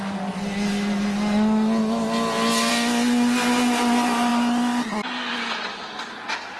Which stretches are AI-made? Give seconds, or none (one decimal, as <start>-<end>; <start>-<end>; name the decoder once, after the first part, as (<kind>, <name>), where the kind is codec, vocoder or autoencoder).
none